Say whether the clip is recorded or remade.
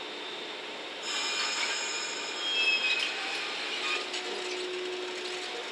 recorded